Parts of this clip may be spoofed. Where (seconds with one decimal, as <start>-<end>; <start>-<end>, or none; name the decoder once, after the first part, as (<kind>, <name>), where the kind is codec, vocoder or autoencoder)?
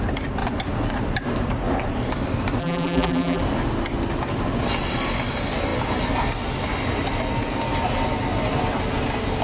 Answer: 2.6-3.4 (vocoder, BigVGAN v2)